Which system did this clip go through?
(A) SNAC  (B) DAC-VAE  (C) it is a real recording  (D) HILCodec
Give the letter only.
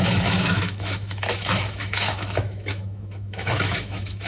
B